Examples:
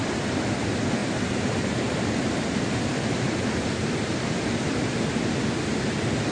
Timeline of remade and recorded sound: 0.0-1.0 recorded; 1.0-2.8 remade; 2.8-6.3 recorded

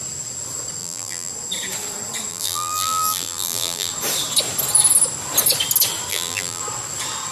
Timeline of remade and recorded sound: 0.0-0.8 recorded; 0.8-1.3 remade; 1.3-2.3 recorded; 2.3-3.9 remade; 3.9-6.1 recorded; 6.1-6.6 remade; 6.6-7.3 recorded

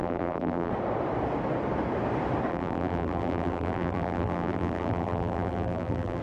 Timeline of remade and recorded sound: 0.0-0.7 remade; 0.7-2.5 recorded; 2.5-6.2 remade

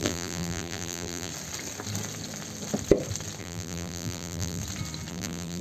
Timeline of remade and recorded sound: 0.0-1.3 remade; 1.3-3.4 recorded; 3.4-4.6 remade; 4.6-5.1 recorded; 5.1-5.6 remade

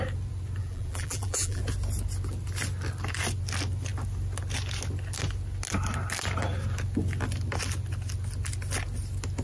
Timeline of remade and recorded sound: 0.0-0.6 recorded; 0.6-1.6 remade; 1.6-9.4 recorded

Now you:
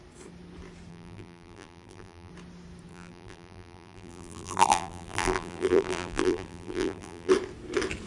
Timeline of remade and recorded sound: 0.0-0.9 recorded; 0.9-2.3 remade; 2.3-2.9 recorded; 2.9-7.3 remade; 7.3-8.1 recorded